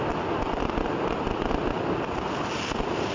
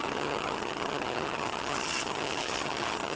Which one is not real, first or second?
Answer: second